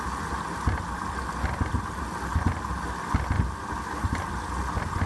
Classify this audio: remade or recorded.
recorded